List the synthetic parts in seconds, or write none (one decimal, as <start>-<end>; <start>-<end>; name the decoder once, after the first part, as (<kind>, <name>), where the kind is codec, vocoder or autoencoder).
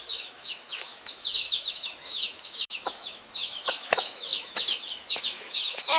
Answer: 0.0-6.0 (autoencoder, DAC-VAE)